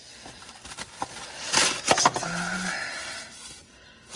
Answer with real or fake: real